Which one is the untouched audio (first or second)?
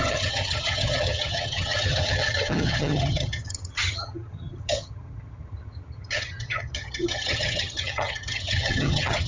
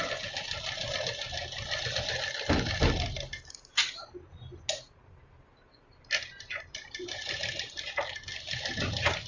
second